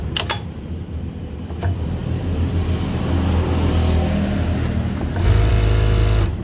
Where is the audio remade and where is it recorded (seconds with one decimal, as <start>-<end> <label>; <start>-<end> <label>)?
0.0-6.4 recorded